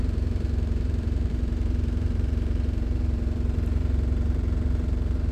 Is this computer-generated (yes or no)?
yes